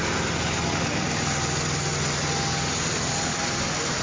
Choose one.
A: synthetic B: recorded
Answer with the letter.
B